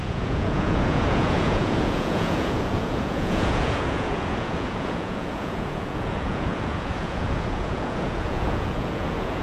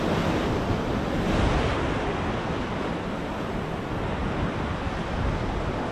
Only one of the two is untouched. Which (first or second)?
second